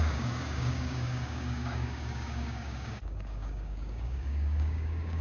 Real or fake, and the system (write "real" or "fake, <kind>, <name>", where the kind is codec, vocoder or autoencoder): fake, codec, DAC